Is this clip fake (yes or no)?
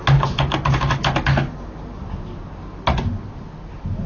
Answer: no